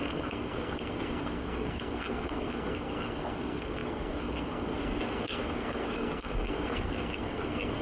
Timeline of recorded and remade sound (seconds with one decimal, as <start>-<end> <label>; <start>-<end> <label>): 0.0-7.8 remade